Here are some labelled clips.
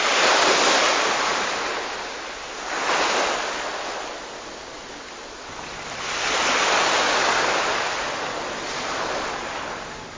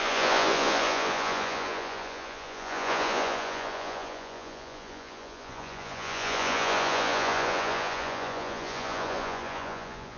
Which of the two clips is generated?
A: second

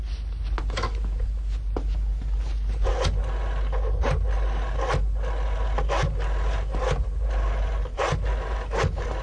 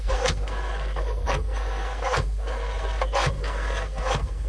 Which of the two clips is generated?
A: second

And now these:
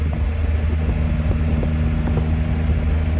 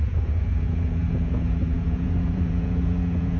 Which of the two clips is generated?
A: second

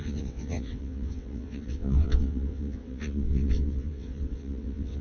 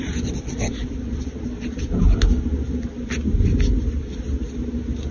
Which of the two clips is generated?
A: first